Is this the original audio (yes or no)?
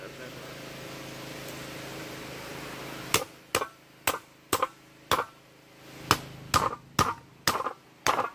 yes